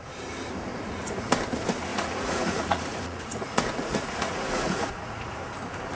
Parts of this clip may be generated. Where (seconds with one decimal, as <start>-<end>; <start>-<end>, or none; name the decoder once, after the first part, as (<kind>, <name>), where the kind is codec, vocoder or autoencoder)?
0.7-1.3 (vocoder, Vocos); 1.9-5.4